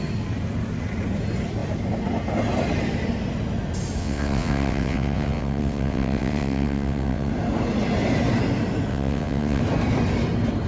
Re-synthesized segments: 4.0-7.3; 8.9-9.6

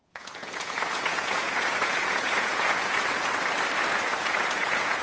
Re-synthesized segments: 0.0-3.0; 4.1-5.0